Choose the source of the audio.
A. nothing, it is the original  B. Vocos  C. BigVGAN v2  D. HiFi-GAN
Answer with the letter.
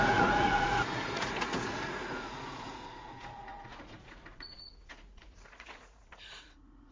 B